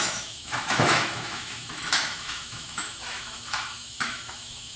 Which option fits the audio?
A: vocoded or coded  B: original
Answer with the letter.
A